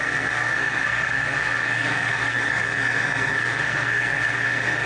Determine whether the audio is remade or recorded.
remade